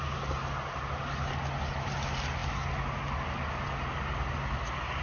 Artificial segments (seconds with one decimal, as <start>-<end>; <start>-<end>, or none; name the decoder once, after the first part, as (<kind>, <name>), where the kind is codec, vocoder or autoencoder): none